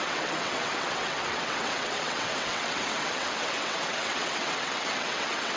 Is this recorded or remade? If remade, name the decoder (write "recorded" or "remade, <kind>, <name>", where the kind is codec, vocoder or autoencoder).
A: remade, vocoder, WaveNeXt